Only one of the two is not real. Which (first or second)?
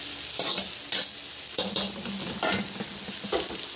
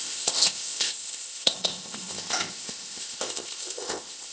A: second